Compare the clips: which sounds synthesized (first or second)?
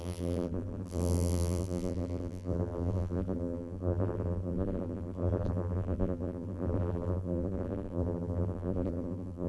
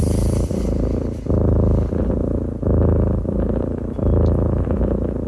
first